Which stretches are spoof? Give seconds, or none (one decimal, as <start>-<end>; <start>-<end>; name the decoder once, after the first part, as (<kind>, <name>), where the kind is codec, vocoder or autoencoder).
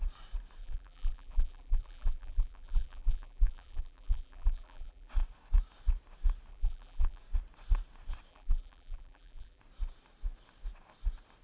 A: 0.6-5.1 (vocoder, BigVGAN v2); 6.5-7.2; 8.3-9.6